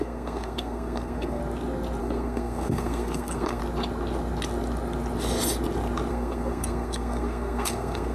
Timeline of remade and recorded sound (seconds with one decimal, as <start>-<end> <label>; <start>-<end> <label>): 0.0-1.4 remade; 1.4-2.0 recorded; 2.0-3.6 remade; 3.6-6.1 recorded; 6.1-8.1 remade